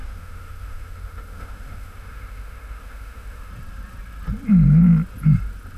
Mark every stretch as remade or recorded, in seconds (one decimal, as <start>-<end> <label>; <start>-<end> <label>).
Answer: 0.0-3.5 remade; 3.5-5.8 recorded